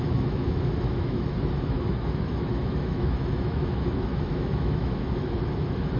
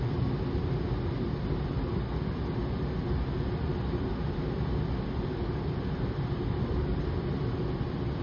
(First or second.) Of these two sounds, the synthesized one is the first